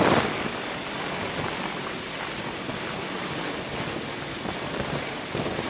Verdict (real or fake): real